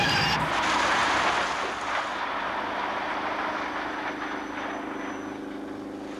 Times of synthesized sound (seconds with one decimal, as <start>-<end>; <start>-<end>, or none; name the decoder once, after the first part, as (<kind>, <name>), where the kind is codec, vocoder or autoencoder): none